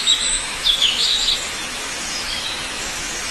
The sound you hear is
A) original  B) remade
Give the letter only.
B